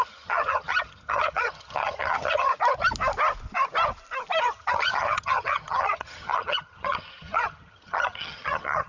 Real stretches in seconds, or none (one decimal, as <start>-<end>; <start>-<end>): 2.5-4.4